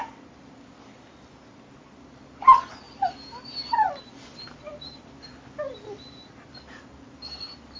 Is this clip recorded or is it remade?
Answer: recorded